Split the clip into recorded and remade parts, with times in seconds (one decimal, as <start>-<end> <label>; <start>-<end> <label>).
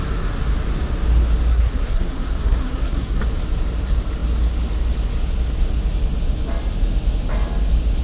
0.0-1.5 recorded; 1.5-3.2 remade; 3.2-8.0 recorded